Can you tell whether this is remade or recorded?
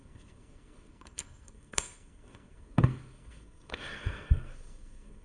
remade